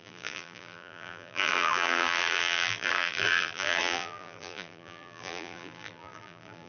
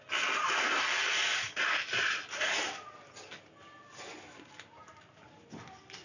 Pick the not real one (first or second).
first